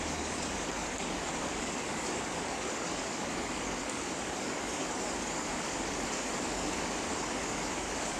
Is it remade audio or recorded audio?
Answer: remade